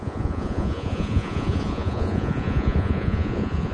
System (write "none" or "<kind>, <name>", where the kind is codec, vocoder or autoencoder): vocoder, Vocos